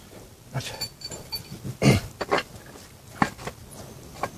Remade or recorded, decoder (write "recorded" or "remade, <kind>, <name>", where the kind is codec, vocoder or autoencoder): recorded